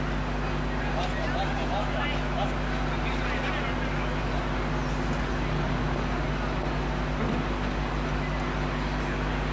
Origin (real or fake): real